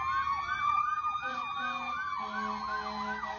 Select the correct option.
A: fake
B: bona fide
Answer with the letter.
B